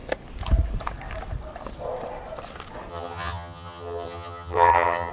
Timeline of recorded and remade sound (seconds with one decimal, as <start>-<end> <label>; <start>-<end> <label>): 0.0-2.9 recorded; 2.9-5.1 remade